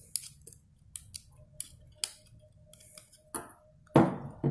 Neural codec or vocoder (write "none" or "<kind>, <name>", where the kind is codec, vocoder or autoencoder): none